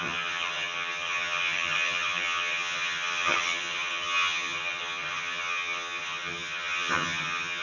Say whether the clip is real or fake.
fake